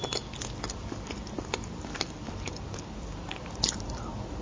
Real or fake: real